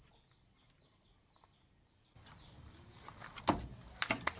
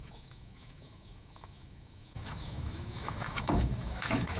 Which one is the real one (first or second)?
first